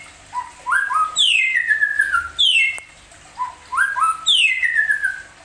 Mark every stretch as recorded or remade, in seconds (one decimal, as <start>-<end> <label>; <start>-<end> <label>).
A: 0.0-5.4 recorded